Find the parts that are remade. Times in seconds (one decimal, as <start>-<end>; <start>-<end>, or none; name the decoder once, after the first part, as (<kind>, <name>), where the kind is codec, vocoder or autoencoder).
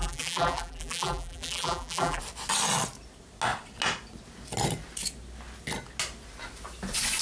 0.0-2.2 (vocoder, BigVGAN v2)